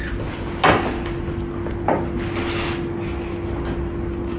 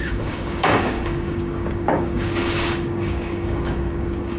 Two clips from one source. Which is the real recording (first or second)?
first